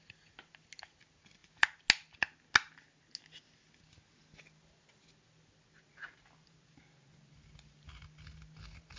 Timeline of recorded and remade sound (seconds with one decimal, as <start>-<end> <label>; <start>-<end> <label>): 0.0-9.0 recorded